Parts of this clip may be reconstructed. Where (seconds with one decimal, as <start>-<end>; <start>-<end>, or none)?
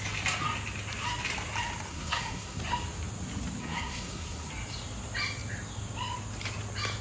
1.9-2.6; 3.6-4.5